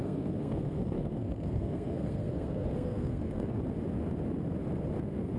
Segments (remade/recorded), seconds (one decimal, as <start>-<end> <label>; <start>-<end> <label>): 0.0-3.6 remade; 3.6-5.0 recorded; 5.0-5.4 remade